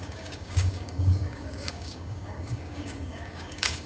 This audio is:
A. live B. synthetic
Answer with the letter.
B